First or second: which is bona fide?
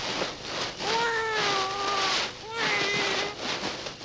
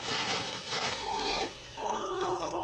first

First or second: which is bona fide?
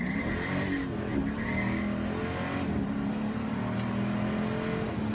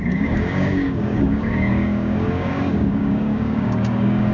first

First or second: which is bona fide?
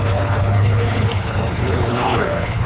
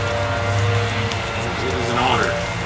second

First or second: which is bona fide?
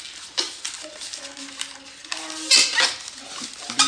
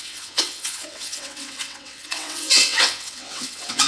first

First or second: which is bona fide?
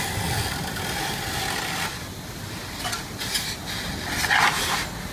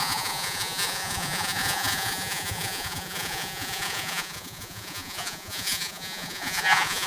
first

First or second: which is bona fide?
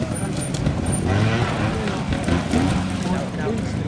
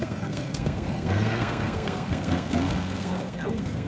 first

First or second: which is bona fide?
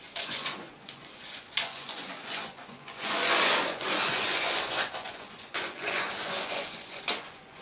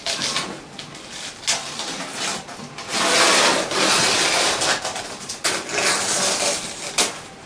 second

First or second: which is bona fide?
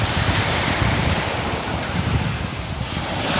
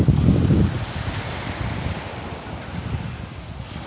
second